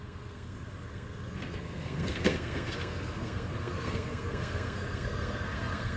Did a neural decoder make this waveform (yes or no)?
yes